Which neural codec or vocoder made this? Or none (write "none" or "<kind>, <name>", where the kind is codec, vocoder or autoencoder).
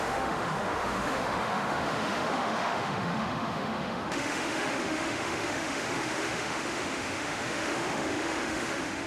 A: autoencoder, DAC-VAE